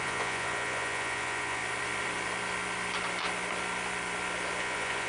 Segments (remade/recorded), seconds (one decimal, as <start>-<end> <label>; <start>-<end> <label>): 0.0-1.6 remade; 1.6-4.6 recorded; 4.6-5.1 remade